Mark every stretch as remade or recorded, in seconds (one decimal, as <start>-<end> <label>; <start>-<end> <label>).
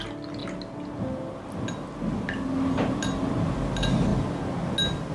0.0-5.1 recorded